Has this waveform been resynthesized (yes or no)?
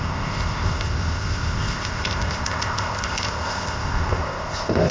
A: yes